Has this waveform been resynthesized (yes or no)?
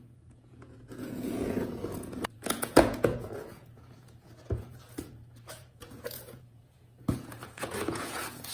yes